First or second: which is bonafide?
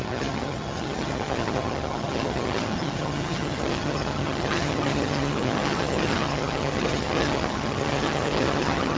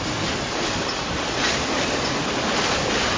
second